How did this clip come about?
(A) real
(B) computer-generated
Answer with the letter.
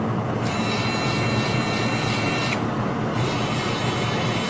A